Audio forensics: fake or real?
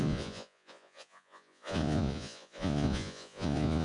fake